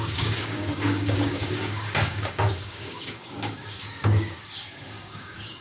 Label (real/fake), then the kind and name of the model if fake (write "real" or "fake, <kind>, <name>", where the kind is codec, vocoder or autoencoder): fake, codec, DAC